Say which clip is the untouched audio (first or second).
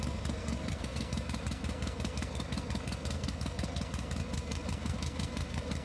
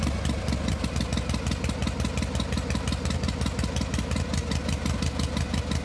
second